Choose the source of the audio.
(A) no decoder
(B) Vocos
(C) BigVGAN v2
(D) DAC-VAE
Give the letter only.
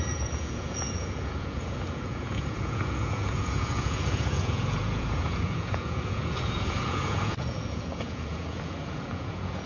B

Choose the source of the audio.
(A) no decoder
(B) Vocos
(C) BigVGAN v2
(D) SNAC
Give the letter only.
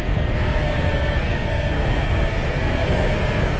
D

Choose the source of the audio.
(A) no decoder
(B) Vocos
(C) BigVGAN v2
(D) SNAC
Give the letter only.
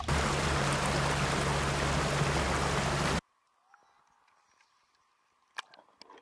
A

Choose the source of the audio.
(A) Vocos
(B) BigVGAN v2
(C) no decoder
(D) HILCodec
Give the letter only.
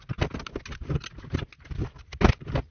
C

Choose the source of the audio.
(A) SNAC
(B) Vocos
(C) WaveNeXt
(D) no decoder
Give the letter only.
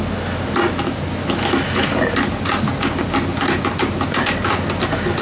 D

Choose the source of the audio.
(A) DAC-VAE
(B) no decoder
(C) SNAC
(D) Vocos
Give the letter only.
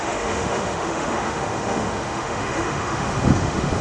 A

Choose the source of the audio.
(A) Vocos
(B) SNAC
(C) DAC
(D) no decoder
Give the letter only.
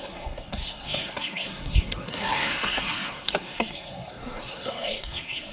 B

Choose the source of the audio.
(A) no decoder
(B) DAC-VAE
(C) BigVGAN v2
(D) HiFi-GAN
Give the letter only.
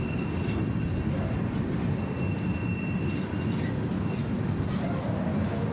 A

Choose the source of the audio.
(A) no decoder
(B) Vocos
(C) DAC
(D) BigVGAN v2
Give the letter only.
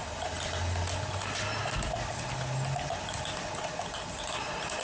A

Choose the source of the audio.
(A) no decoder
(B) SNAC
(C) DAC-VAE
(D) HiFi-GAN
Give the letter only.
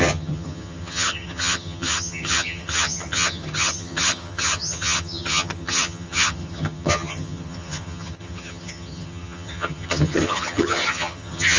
D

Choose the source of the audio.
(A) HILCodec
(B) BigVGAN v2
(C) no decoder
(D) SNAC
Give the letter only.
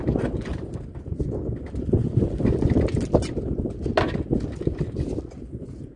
C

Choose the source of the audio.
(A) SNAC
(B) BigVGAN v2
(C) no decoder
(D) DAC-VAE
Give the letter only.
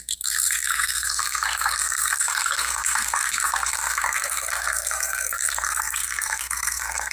A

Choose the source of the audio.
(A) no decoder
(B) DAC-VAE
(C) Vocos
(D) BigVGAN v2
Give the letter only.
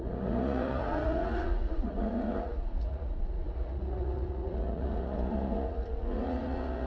C